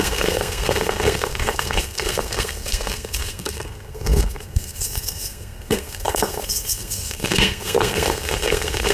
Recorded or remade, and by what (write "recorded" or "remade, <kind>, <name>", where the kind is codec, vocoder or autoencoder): remade, codec, SNAC